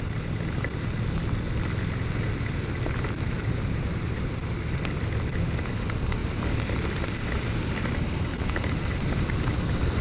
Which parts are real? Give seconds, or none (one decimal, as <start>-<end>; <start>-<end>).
0.0-3.4; 4.9-6.2; 8.0-10.0